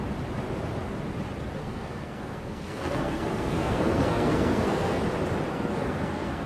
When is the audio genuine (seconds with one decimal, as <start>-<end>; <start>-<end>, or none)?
0.0-1.6; 5.0-5.5